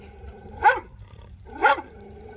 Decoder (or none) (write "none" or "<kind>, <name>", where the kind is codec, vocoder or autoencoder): vocoder, BigVGAN v2